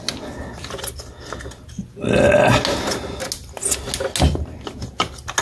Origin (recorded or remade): recorded